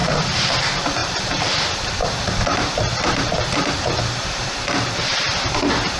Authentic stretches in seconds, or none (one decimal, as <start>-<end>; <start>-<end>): 0.5-1.0; 1.5-2.0; 5.6-6.0